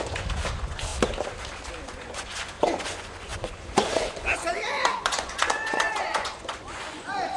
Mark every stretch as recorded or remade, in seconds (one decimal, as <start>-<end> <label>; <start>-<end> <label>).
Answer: 0.0-0.9 remade; 0.9-1.8 recorded; 1.8-7.4 remade